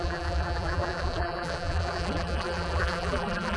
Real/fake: fake